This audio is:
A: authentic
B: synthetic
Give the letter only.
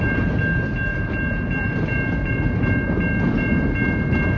A